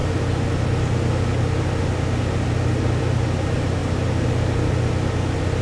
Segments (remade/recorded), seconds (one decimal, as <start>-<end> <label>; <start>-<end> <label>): 0.0-5.6 recorded